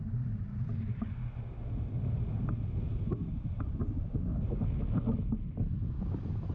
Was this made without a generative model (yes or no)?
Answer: yes